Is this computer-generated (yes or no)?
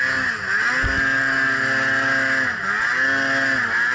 no